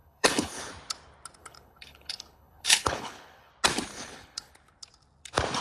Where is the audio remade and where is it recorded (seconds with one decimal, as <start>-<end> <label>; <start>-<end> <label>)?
0.0-0.7 remade; 0.7-1.4 recorded; 1.4-3.5 remade; 3.5-3.9 recorded; 3.9-4.5 remade; 4.5-5.6 recorded